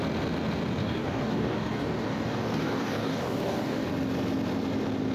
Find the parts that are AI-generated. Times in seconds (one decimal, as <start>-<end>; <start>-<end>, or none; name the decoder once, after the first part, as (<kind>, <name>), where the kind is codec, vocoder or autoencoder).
0.8-3.9 (codec, DAC)